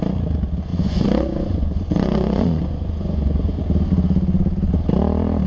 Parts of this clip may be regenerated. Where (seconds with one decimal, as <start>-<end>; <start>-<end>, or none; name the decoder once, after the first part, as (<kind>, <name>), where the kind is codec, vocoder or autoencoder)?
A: 0.7-3.6 (vocoder, Vocos)